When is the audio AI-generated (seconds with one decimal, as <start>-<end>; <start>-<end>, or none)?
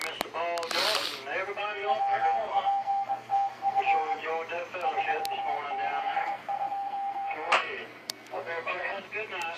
1.6-4.3; 6.0-9.0